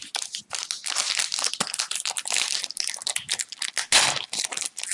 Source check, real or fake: real